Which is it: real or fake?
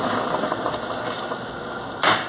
real